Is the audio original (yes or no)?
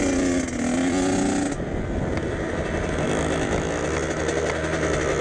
yes